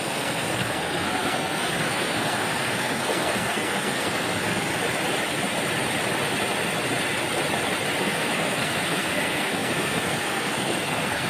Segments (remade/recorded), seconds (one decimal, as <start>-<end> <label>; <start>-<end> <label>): 0.0-4.7 remade; 4.7-8.0 recorded; 8.0-11.3 remade